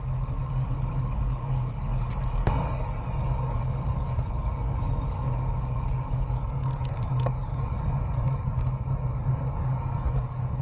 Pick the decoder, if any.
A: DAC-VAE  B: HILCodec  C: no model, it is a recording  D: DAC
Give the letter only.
D